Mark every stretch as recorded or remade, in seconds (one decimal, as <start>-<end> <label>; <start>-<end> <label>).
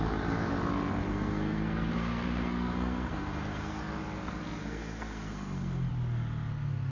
0.0-1.0 recorded; 1.0-3.8 remade; 3.8-4.6 recorded; 4.6-5.9 remade; 5.9-6.9 recorded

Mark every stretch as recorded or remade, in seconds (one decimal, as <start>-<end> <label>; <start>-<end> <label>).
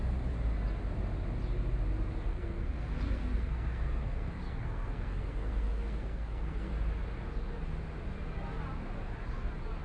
0.0-2.3 recorded; 2.3-6.7 remade; 6.7-9.8 recorded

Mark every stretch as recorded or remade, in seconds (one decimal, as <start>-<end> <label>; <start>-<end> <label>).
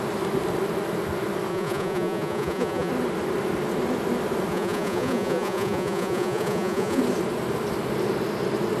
0.0-1.5 recorded; 1.5-2.9 remade; 2.9-4.5 recorded; 4.5-7.0 remade; 7.0-8.8 recorded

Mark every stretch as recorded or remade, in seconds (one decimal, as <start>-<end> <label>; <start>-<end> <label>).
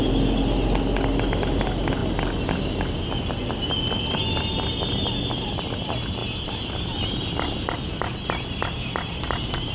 0.0-9.7 recorded